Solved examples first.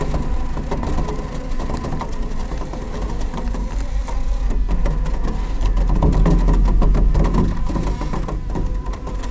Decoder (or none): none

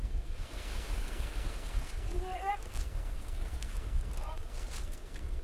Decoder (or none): codec, SNAC